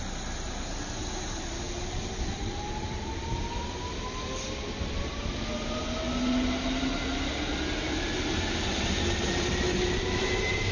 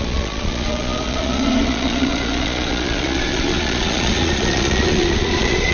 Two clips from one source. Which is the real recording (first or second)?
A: first